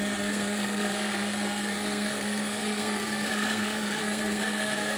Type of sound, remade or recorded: remade